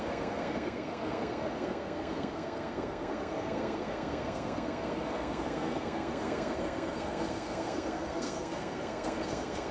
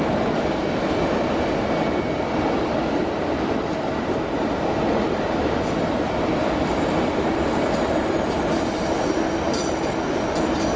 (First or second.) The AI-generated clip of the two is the first